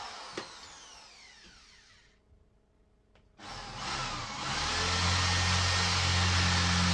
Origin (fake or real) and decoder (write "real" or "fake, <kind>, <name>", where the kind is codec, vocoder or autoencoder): real